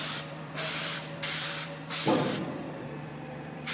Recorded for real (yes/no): no